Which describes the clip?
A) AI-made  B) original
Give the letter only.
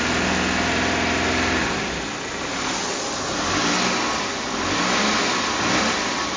B